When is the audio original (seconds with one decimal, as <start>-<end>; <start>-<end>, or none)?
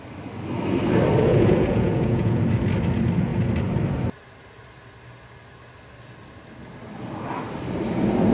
0.0-1.3; 2.4-8.3